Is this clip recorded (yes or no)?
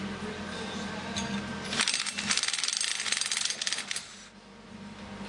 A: yes